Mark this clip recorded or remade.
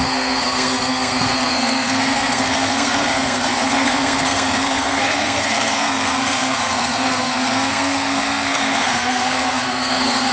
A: remade